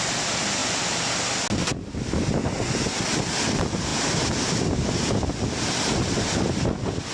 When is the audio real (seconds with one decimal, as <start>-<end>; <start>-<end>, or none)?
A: 0.0-7.1